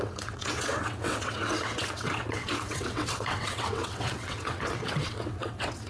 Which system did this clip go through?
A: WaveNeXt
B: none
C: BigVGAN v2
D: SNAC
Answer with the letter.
A